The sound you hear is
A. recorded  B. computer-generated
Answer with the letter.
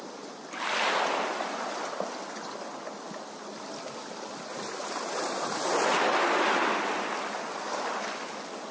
A